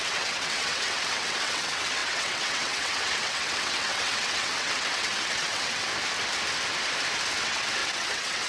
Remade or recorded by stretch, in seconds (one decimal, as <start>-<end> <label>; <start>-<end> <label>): 0.0-5.9 remade; 5.9-7.3 recorded; 7.3-8.5 remade

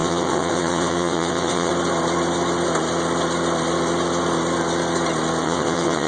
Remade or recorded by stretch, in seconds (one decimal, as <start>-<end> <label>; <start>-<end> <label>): 0.0-1.7 remade; 1.7-5.4 recorded; 5.4-6.1 remade

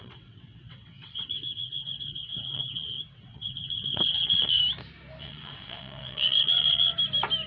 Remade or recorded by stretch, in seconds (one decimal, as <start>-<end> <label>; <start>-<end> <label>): 0.0-4.6 remade; 4.6-5.2 recorded; 5.2-6.9 remade; 6.9-7.5 recorded